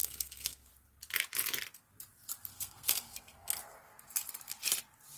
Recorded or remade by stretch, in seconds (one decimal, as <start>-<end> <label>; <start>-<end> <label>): 0.0-0.7 remade; 0.7-2.5 recorded; 2.5-3.6 remade; 3.6-5.2 recorded